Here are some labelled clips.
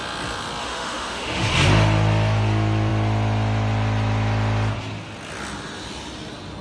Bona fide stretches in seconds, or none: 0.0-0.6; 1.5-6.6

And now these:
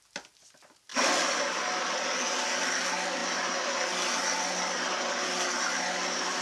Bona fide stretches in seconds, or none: 0.0-6.4

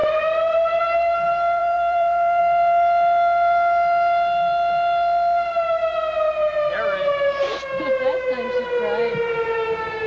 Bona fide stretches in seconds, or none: 0.8-1.6; 2.4-10.1

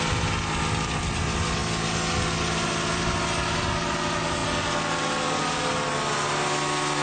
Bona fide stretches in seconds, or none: 0.0-7.0